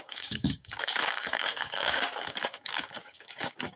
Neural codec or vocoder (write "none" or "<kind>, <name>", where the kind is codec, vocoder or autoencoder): codec, DAC